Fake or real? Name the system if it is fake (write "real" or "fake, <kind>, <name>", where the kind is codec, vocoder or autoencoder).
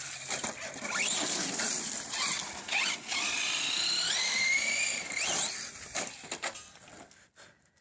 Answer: real